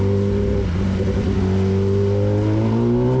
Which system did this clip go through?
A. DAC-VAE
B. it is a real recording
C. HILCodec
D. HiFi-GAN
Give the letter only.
B